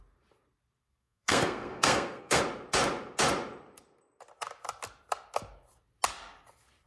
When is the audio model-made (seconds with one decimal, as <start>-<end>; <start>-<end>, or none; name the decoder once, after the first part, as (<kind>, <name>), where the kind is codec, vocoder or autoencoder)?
0.8-2.4 (codec, SNAC)